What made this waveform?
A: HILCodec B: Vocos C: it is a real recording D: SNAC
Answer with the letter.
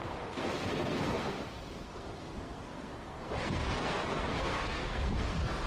D